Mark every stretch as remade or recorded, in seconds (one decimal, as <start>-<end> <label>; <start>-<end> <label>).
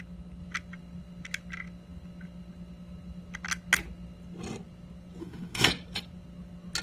0.0-5.2 recorded; 5.2-5.7 remade; 5.7-6.8 recorded